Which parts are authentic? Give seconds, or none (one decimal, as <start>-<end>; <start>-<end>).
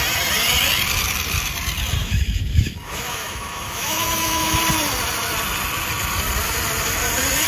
0.0-2.0; 4.6-7.5